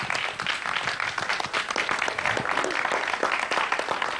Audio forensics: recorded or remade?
recorded